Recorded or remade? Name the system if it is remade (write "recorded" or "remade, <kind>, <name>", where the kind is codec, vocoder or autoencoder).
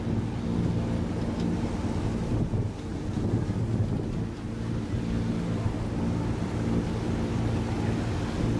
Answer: recorded